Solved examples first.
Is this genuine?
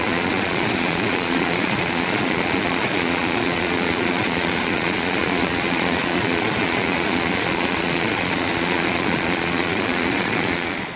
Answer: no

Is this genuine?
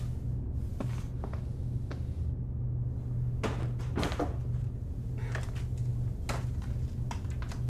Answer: yes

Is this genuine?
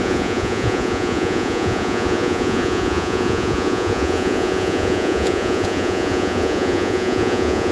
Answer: no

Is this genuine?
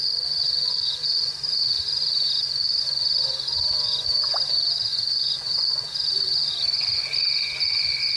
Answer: no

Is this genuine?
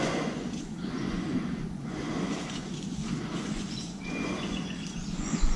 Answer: no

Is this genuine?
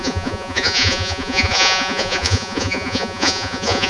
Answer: no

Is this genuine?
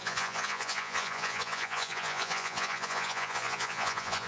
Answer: no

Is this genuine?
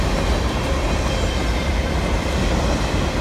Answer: yes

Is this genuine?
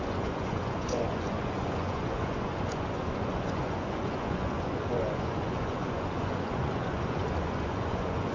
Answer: no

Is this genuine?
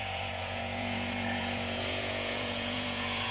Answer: no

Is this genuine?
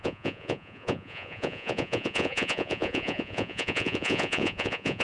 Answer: no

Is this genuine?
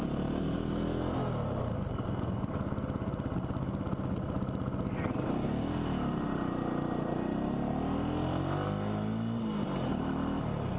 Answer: yes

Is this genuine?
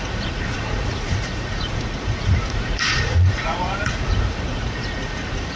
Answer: no